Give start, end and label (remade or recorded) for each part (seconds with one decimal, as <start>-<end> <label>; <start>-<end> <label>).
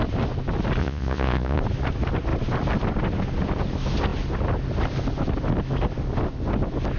0.0-0.8 recorded; 0.8-1.6 remade; 1.6-7.0 recorded